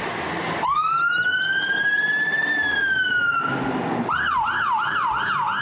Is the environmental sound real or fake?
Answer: real